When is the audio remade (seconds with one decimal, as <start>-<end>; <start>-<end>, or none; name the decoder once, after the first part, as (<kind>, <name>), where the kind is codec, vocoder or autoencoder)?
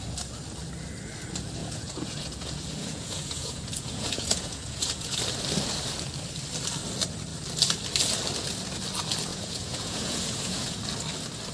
1.6-5.2 (vocoder, Vocos); 9.3-10.8